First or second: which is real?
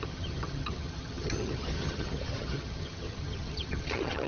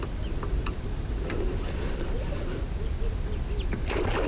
second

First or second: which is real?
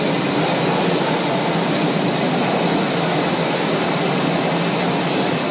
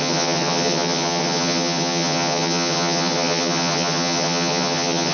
first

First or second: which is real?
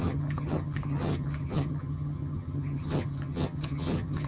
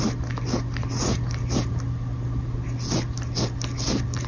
second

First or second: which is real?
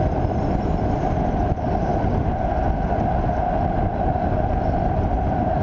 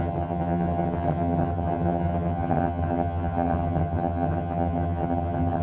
first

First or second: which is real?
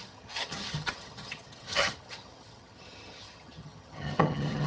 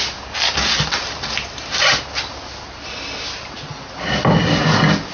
second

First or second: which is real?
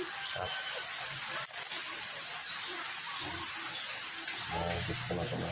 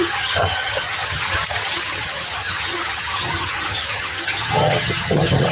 first